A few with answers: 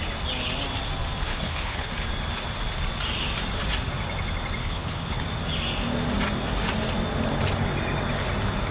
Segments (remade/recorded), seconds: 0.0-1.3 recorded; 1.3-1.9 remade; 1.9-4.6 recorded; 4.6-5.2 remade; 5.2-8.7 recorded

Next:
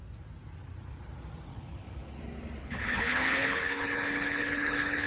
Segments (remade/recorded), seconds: 0.0-1.5 recorded; 1.5-2.2 remade; 2.2-2.6 recorded; 2.6-5.1 remade